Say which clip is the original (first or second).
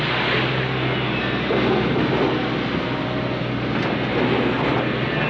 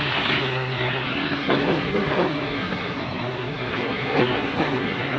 first